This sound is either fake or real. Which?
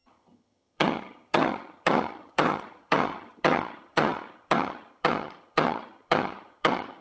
fake